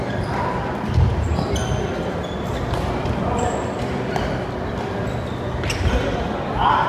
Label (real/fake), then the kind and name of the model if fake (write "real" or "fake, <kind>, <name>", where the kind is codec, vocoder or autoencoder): real